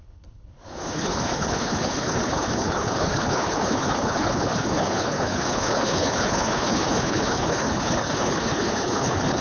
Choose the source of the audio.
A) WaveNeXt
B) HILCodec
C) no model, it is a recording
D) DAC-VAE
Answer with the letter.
B